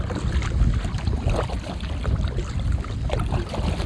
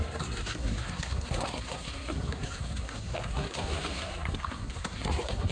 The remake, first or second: second